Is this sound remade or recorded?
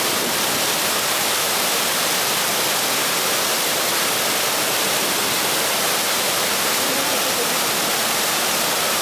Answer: remade